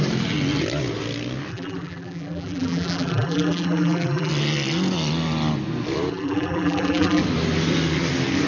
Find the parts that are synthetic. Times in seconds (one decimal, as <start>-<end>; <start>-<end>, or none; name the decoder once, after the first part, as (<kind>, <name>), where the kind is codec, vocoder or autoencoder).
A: 1.5-4.3 (vocoder, BigVGAN v2); 6.1-7.2